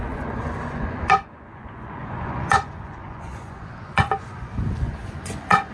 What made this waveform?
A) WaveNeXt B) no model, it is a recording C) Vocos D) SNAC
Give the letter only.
C